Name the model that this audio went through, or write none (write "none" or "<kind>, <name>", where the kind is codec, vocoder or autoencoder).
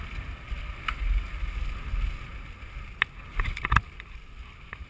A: none